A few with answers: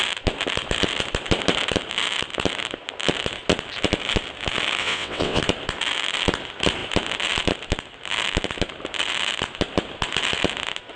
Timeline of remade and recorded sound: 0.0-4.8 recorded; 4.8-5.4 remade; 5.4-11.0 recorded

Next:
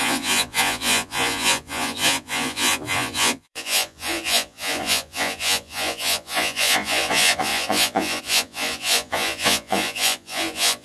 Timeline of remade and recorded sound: 0.0-10.8 remade

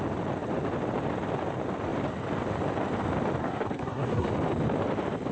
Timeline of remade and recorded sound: 0.0-3.4 recorded; 3.4-4.3 remade; 4.3-5.3 recorded

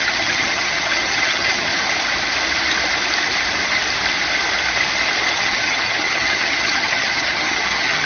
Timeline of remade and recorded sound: 0.0-1.7 remade; 1.7-5.3 recorded; 5.3-8.1 remade

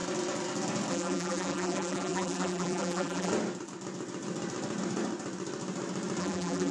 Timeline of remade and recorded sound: 0.0-0.9 recorded; 0.9-3.3 remade; 3.3-6.2 recorded; 6.2-6.7 remade

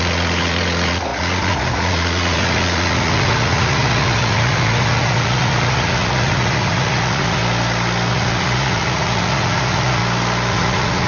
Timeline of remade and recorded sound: 0.0-7.4 remade; 7.4-8.1 recorded; 8.1-10.0 remade; 10.0-10.5 recorded; 10.5-11.1 remade